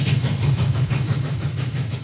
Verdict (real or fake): fake